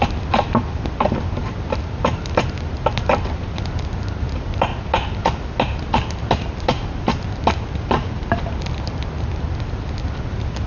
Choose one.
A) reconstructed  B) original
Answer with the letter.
B